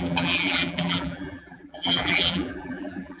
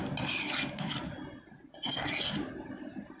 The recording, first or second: second